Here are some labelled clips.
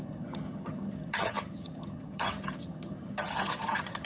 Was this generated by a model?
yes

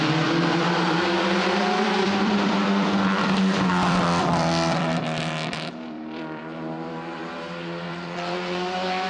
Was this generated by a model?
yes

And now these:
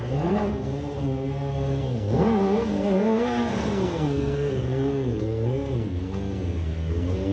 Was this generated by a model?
yes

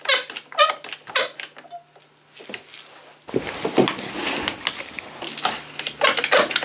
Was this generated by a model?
no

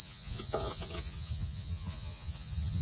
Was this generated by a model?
yes